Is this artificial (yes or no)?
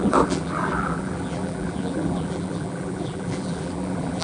yes